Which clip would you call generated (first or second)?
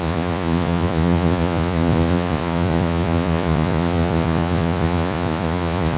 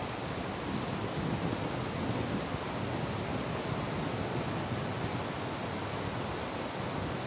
first